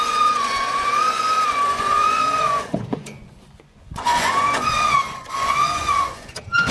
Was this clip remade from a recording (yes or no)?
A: yes